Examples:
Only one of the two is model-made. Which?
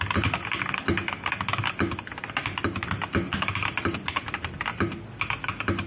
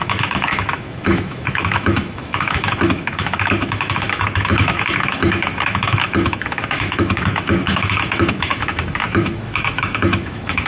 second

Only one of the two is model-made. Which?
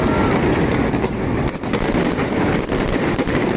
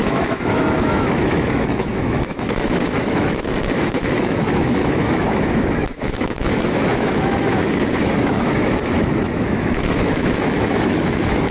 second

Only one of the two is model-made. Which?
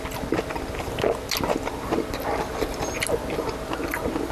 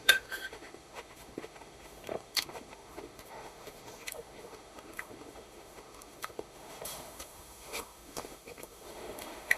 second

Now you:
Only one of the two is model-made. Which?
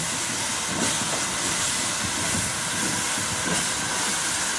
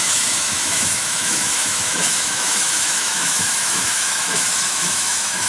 second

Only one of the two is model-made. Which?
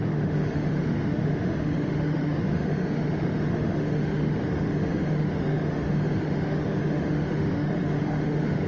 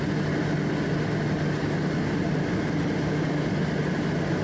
first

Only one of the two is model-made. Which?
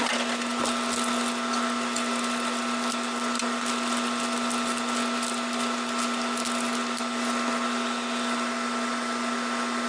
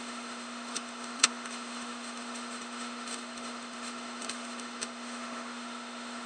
second